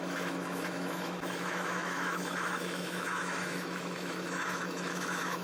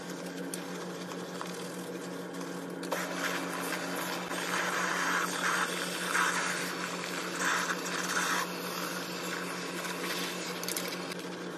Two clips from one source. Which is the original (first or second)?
second